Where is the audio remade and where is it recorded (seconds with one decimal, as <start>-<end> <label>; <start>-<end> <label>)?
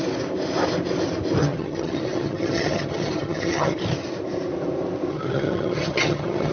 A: 0.0-1.4 recorded; 1.4-3.8 remade; 3.8-5.1 recorded; 5.1-6.5 remade